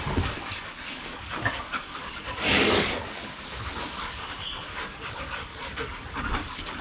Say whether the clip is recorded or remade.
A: remade